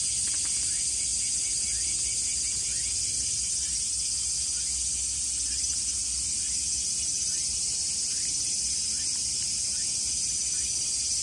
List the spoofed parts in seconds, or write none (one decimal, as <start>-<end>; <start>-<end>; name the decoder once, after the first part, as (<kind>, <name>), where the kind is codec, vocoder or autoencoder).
none